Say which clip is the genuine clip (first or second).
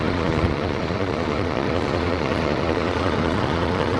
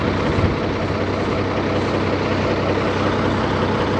second